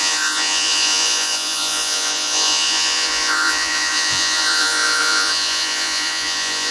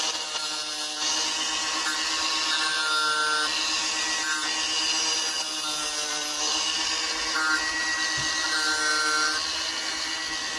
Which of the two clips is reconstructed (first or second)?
first